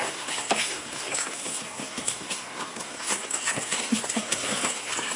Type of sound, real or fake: fake